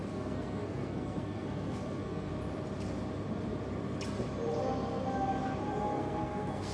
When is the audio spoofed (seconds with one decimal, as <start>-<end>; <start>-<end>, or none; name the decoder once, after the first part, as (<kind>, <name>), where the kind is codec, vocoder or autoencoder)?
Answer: 0.0-2.3 (codec, SNAC); 5.8-6.7